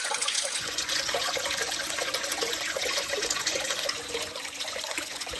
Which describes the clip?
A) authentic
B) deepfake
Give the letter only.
B